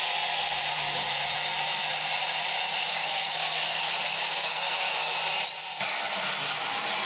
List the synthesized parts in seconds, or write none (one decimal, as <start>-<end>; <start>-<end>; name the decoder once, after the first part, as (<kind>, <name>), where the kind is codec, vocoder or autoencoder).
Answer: 2.9-5.2 (codec, SNAC)